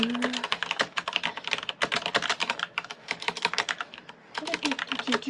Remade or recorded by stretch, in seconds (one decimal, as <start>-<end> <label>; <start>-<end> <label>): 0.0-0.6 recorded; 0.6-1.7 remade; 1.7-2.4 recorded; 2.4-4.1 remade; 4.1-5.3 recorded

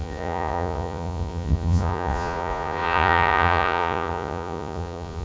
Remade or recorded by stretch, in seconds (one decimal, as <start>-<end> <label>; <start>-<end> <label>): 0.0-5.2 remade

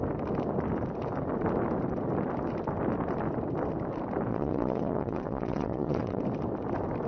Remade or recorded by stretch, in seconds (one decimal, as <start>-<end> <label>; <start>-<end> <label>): 0.0-4.3 recorded; 4.3-6.2 remade; 6.2-7.1 recorded

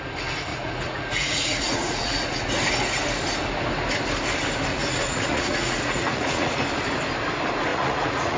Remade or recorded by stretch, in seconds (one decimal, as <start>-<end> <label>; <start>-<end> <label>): 0.0-0.5 recorded; 0.5-2.5 remade; 2.5-4.7 recorded; 4.7-6.6 remade; 6.6-7.7 recorded; 7.7-8.4 remade

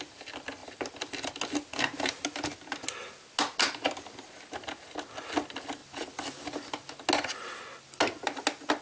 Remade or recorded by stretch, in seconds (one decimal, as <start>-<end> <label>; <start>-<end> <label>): 0.0-8.8 recorded

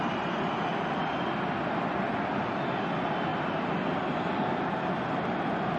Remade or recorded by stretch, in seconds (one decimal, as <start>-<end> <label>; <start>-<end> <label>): 0.0-5.8 recorded